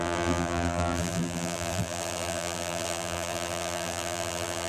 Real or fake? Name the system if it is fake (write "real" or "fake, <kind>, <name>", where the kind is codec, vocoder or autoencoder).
fake, vocoder, BigVGAN v2